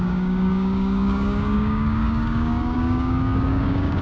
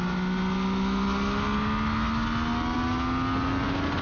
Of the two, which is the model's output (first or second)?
first